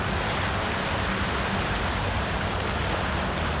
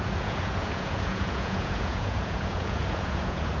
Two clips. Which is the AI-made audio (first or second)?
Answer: second